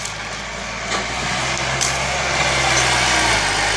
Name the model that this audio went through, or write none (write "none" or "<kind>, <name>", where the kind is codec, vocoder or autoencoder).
none